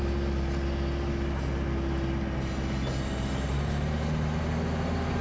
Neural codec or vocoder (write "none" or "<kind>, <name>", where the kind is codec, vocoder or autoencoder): none